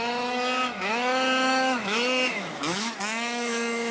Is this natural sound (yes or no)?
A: no